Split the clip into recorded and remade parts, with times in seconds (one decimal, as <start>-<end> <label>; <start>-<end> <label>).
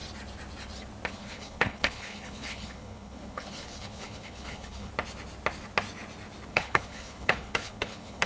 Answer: 0.0-1.1 recorded; 1.1-4.9 remade; 4.9-6.5 recorded; 6.5-8.3 remade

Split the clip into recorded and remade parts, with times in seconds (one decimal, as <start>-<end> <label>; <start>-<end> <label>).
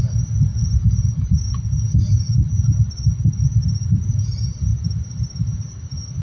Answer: 0.0-4.7 recorded; 4.7-6.2 remade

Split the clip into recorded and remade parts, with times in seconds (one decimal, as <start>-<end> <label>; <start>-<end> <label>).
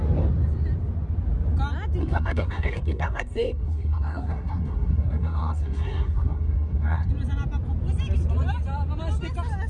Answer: 0.0-2.0 recorded; 2.0-7.1 remade; 7.1-9.7 recorded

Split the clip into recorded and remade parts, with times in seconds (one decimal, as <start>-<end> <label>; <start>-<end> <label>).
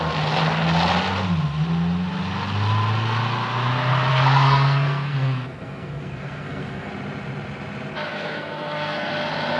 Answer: 0.0-4.1 recorded; 4.1-6.9 remade; 6.9-8.1 recorded; 8.1-9.1 remade; 9.1-9.6 recorded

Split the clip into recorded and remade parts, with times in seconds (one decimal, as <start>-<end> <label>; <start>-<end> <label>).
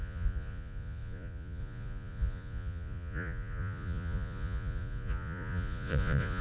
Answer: 0.0-6.4 remade